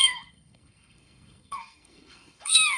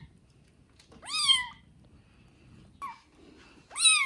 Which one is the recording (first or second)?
second